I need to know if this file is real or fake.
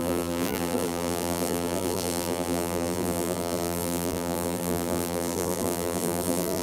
fake